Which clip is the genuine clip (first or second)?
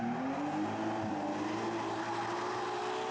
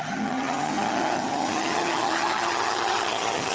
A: first